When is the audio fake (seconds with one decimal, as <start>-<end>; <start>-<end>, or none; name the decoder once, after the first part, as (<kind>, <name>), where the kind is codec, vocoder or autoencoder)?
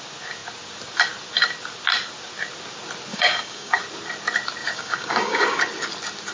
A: 3.1-3.8 (codec, DAC); 4.6-5.6